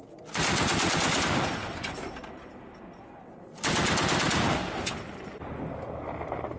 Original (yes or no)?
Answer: yes